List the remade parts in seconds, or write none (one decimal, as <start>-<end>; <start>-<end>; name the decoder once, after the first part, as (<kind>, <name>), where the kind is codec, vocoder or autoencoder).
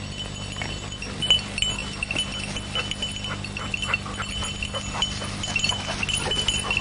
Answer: none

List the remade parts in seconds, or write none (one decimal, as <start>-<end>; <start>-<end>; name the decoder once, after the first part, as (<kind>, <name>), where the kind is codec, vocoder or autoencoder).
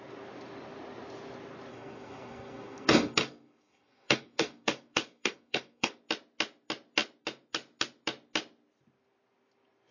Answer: 1.7-6.0 (codec, SNAC)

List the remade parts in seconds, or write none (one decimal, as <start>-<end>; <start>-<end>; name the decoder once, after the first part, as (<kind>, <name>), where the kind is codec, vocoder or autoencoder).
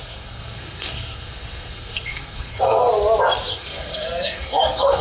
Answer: 0.0-2.9 (codec, SNAC); 3.5-5.0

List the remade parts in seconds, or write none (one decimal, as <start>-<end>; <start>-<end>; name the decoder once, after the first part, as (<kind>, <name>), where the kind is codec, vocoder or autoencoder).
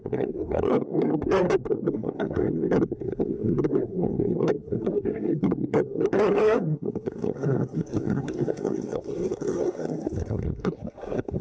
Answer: 0.0-11.4 (codec, SNAC)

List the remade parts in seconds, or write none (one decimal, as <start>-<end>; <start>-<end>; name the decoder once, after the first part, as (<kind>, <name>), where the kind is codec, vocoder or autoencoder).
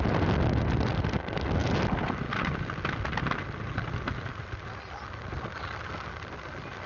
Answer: none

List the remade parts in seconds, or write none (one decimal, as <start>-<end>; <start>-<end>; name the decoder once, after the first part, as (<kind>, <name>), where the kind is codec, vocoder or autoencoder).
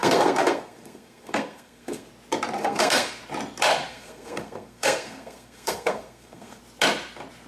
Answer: 0.0-2.1 (codec, SNAC); 2.6-3.2; 3.9-6.6